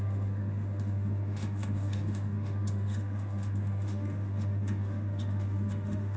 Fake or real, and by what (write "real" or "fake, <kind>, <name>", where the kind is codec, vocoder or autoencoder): fake, autoencoder, DAC-VAE